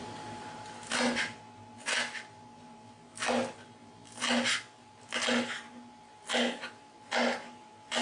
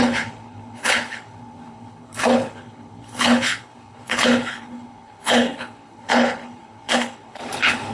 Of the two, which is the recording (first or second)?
first